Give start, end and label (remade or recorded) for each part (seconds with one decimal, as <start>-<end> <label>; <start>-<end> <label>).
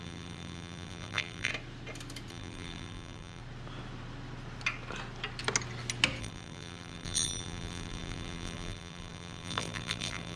0.0-1.5 remade; 1.5-2.3 recorded; 2.3-3.4 remade; 3.4-6.2 recorded; 6.2-10.4 remade